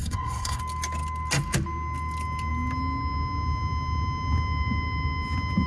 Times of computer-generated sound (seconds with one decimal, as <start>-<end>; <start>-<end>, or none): 0.0-0.6